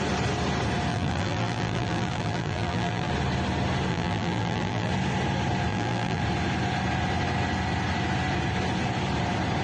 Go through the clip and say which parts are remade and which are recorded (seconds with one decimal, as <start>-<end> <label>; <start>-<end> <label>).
0.0-0.9 recorded; 0.9-3.1 remade; 3.1-3.9 recorded; 3.9-4.9 remade; 4.9-5.7 recorded; 5.7-6.2 remade; 6.2-9.6 recorded